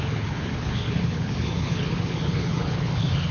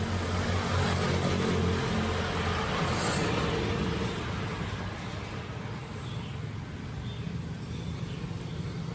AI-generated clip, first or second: first